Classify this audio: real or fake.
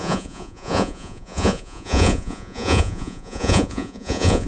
fake